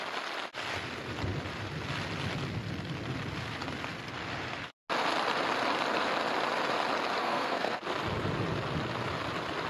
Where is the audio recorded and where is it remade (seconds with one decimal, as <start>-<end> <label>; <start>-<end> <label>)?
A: 0.0-7.2 recorded; 7.2-7.8 remade; 7.8-9.7 recorded